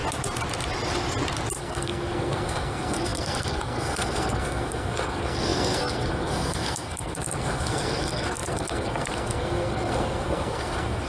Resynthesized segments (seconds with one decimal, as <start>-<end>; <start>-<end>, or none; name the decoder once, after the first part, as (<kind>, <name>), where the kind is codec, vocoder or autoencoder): 1.6-11.1 (codec, SNAC)